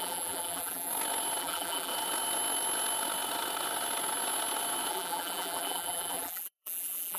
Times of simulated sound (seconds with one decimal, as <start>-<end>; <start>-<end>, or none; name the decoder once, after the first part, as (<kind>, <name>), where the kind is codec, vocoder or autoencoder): 0.0-0.9 (vocoder, BigVGAN v2); 1.4-1.9; 4.9-7.2